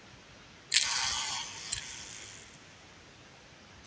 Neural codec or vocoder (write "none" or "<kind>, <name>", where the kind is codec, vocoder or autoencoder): none